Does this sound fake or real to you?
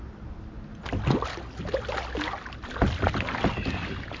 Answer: real